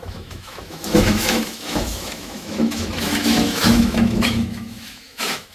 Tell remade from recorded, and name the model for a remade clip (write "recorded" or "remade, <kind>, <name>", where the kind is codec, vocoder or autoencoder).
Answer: remade, autoencoder, DAC-VAE